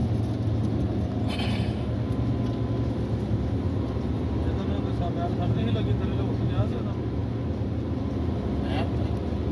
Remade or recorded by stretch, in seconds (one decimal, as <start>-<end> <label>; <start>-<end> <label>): 0.0-9.5 recorded